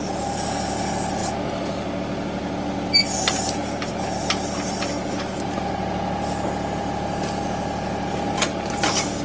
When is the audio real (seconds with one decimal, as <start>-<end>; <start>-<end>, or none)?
0.0-9.2